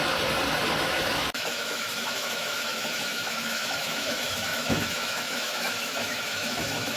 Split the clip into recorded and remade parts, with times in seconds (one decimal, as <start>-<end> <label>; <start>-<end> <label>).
0.0-0.8 recorded; 0.8-7.0 remade